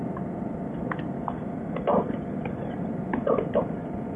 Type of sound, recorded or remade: recorded